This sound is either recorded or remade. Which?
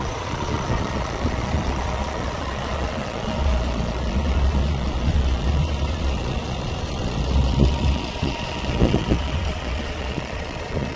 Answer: remade